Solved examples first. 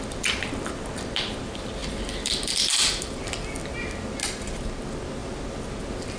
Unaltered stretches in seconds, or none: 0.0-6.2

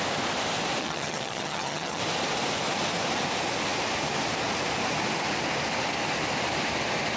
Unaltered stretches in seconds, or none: 0.0-0.8; 2.0-7.2

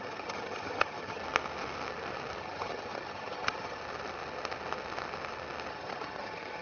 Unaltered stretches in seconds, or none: 1.2-2.4; 3.8-5.7

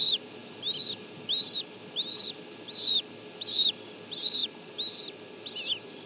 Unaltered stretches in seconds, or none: 0.0-6.1

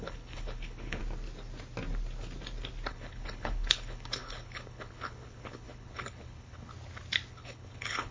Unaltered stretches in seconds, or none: 1.0-2.9; 6.7-7.3

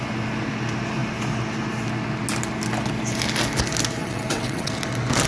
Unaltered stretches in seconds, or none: 0.0-4.0; 4.7-5.3

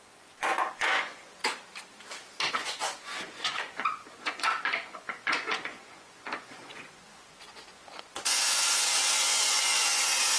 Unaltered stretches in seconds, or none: 1.4-2.5

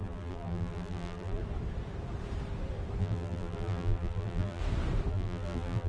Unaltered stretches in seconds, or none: 1.4-3.0; 4.6-5.1